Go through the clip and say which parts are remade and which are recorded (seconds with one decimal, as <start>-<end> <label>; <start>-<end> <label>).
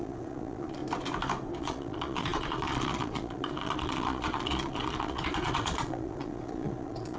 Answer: 0.0-0.8 remade; 0.8-1.6 recorded; 1.6-7.2 remade